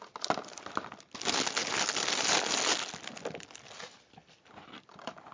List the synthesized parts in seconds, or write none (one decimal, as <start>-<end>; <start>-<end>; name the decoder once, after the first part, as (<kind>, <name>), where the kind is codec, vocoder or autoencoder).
none